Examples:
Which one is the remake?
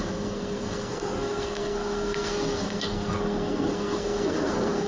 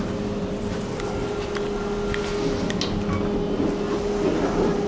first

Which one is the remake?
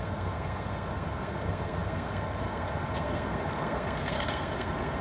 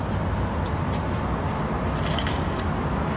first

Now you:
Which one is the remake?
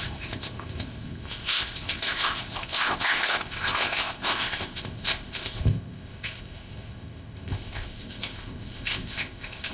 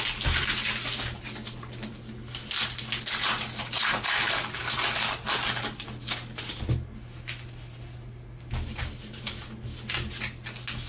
first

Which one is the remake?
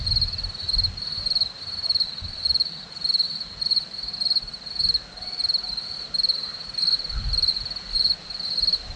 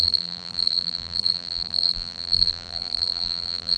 second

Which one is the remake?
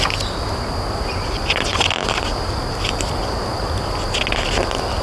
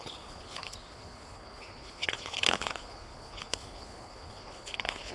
second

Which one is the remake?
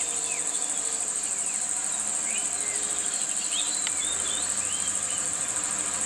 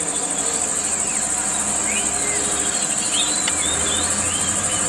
first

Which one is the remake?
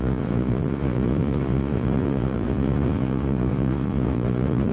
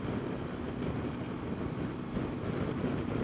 first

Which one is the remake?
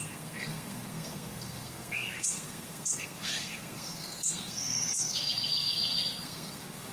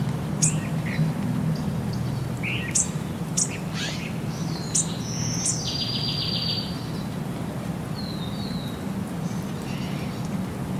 first